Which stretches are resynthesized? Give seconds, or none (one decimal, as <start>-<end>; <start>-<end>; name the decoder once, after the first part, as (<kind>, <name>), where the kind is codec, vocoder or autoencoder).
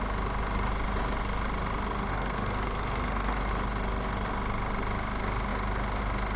2.1-3.5 (codec, SNAC)